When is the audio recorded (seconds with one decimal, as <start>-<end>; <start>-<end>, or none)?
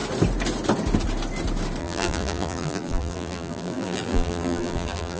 0.0-1.8